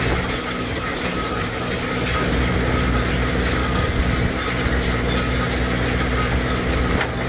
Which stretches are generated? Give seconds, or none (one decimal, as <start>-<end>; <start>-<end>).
3.6-4.1